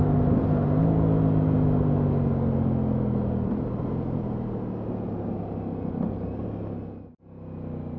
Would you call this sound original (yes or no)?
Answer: yes